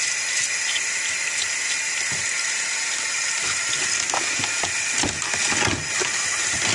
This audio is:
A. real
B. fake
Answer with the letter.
A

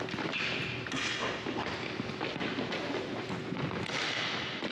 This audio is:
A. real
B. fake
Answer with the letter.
A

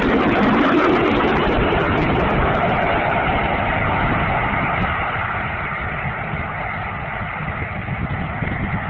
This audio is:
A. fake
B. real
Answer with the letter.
B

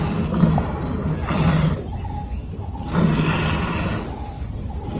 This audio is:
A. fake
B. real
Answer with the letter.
B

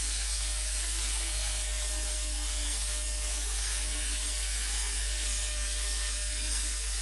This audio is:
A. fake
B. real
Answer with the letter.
A